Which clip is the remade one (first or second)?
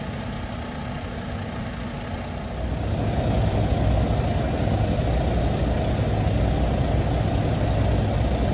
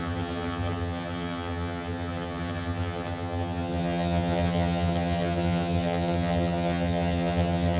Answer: second